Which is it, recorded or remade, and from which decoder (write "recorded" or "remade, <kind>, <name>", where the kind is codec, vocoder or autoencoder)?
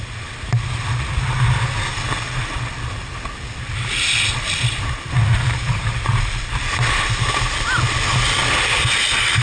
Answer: recorded